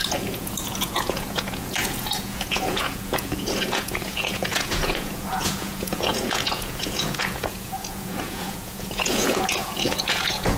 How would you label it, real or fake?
fake